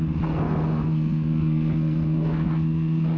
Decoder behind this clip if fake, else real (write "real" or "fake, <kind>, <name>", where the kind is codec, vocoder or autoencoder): fake, codec, SNAC